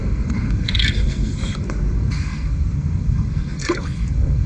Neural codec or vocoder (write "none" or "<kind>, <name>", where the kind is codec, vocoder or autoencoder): codec, SNAC